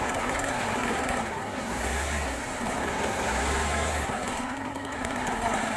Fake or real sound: fake